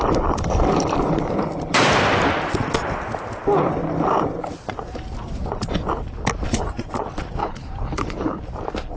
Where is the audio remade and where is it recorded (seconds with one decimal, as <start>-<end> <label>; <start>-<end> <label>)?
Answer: 0.0-7.4 recorded; 7.4-8.4 remade; 8.4-9.0 recorded